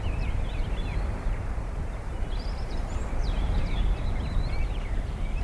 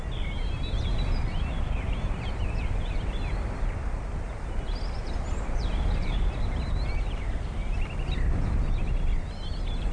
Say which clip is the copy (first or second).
first